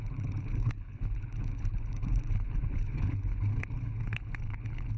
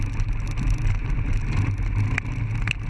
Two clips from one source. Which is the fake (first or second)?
first